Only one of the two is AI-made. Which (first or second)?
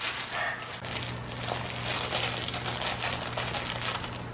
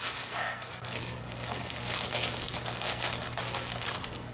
second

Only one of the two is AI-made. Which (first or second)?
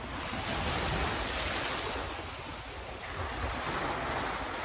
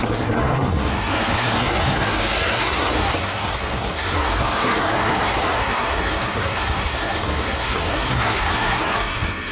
second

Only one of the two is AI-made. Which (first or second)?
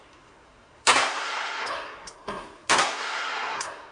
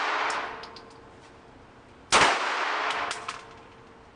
first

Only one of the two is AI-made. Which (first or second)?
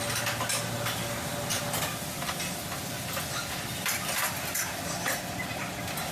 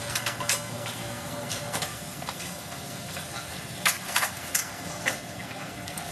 second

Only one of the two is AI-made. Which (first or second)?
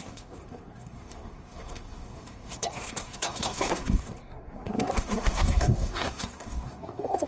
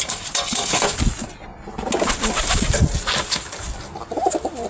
first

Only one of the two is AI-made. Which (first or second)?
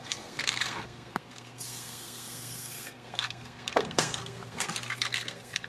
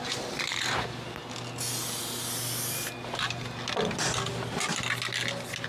first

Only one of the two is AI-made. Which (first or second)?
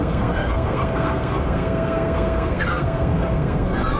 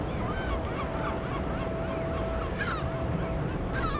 first